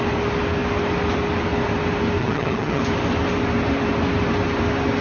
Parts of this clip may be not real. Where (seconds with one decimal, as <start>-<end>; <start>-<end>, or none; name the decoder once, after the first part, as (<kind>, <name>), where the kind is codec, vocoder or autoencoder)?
2.2-2.8 (vocoder, HiFi-GAN)